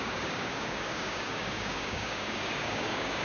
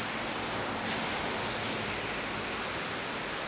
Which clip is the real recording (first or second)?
second